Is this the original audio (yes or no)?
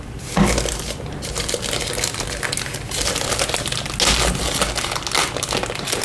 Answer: yes